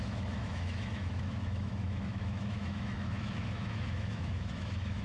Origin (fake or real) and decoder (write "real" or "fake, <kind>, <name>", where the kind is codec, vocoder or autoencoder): fake, autoencoder, DAC-VAE